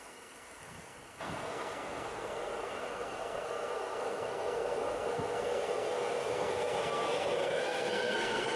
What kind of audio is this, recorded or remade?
remade